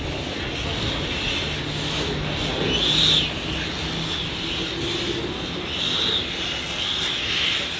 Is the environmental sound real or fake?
real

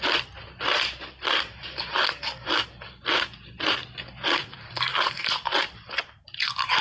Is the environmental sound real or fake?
real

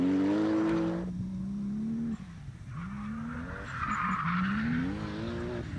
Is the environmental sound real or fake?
real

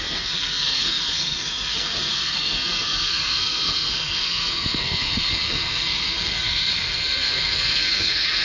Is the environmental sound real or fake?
fake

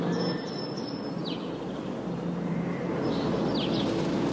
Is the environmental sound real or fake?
real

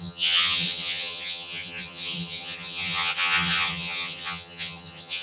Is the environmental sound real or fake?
fake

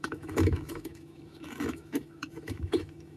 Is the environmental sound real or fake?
fake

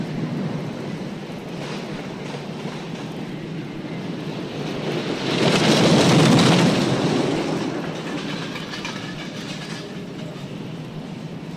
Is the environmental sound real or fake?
real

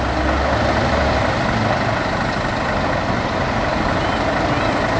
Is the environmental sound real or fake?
real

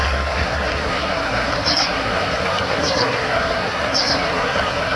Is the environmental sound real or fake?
fake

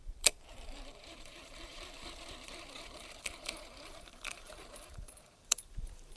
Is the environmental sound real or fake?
fake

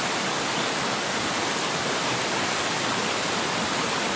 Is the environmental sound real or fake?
real